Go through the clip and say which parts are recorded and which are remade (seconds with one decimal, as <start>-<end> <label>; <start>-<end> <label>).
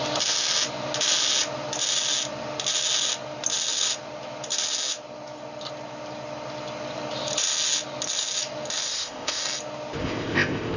0.0-8.9 recorded; 8.9-9.4 remade; 9.4-10.0 recorded; 10.0-10.8 remade